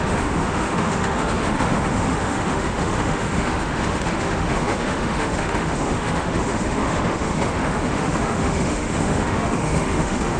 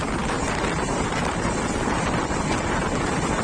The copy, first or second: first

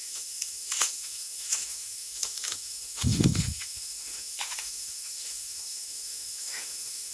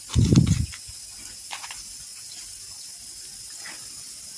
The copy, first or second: first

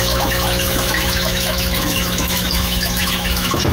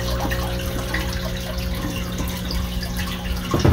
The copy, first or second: first